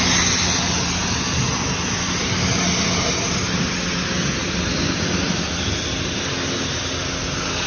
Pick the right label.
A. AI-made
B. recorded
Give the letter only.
B